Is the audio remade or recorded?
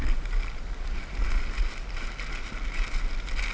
recorded